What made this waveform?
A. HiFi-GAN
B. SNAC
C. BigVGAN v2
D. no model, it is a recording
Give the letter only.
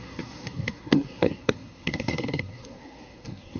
B